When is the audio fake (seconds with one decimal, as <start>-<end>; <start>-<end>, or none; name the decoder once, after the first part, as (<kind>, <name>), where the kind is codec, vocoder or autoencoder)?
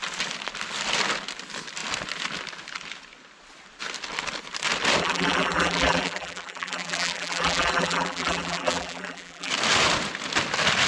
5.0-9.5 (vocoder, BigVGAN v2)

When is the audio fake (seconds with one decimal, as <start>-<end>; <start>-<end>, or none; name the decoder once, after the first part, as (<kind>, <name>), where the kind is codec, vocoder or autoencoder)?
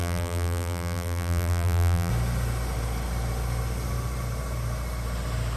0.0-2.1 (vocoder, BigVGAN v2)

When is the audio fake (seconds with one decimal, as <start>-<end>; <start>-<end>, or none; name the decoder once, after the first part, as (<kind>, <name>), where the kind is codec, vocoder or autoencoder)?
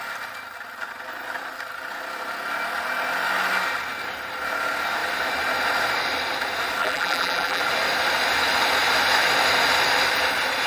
6.8-7.6 (vocoder, BigVGAN v2)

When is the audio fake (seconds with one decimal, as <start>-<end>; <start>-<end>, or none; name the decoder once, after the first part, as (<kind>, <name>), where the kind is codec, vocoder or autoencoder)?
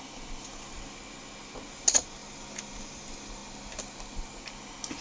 none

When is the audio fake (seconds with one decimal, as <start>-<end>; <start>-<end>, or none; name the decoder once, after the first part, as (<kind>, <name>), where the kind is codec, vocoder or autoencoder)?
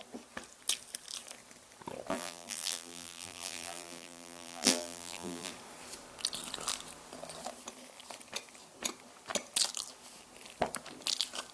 2.1-5.5 (vocoder, BigVGAN v2)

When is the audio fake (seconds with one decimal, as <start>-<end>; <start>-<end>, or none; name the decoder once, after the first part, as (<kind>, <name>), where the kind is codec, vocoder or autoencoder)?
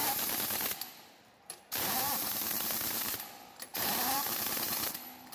0.0-5.3 (vocoder, BigVGAN v2)